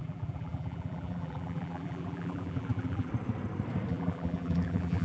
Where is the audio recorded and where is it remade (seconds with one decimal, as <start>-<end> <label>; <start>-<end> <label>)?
0.0-3.1 remade; 3.1-3.9 recorded; 3.9-5.0 remade